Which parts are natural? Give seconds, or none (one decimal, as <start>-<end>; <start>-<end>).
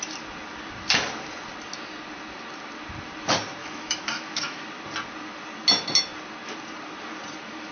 0.0-3.6; 4.6-7.7